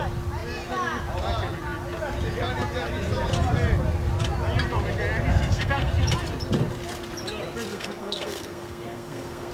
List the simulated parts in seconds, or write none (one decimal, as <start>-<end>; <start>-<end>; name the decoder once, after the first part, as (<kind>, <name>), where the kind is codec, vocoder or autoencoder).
5.3-5.9 (codec, SNAC); 7.7-9.5